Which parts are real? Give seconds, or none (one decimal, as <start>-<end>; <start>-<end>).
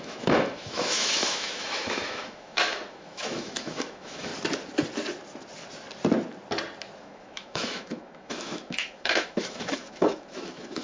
4.3-7.0